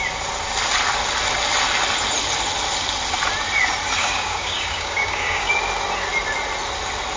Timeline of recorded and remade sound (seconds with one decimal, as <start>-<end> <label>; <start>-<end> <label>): 0.0-4.0 recorded; 4.0-5.5 remade; 5.5-7.2 recorded